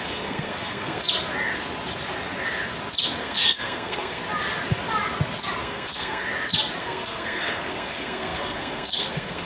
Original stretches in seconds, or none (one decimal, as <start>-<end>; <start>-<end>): 1.0-3.2; 4.2-5.6; 6.2-6.8

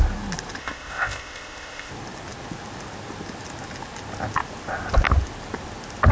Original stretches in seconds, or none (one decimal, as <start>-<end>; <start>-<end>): 0.0-0.6; 1.9-6.1

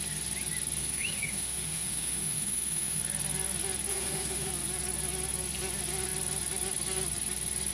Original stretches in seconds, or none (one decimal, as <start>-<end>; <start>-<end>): 0.0-0.8; 3.0-3.9; 4.5-7.7

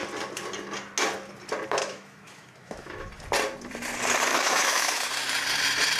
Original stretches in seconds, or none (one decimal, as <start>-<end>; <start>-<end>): 0.0-1.8; 3.1-4.3; 5.1-6.0

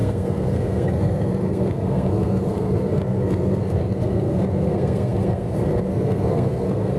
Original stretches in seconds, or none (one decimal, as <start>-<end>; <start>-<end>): none

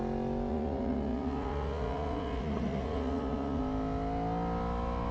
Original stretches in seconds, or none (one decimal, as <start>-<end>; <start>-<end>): 0.0-0.5; 3.6-5.1

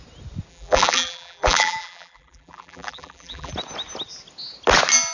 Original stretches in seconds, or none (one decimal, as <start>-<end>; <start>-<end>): 0.0-0.5; 3.5-5.1

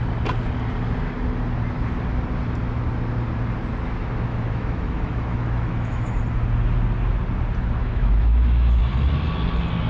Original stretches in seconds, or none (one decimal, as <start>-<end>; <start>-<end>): 0.0-4.3; 6.2-7.8; 8.8-9.9